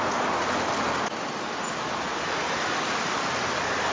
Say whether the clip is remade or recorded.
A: recorded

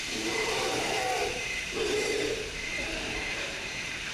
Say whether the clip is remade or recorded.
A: remade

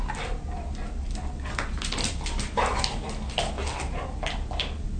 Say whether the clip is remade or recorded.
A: recorded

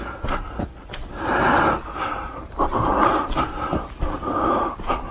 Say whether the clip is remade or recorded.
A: recorded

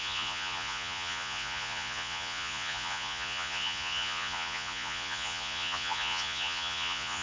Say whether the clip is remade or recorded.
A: remade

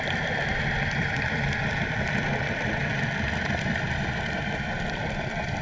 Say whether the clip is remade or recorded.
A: remade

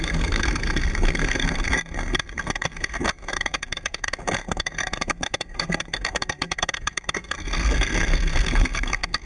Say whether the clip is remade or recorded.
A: remade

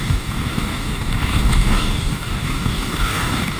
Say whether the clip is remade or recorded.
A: remade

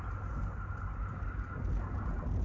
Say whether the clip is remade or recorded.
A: recorded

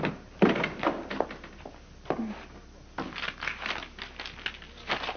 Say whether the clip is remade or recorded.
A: recorded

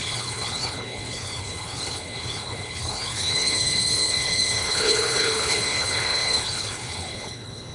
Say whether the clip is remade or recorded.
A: remade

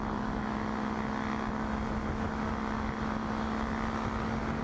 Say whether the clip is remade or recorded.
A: recorded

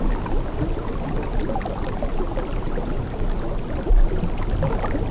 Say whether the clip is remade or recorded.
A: recorded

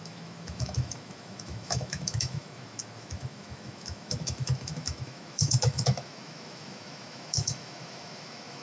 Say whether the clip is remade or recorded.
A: remade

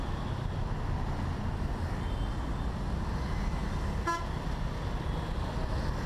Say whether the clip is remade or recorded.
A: recorded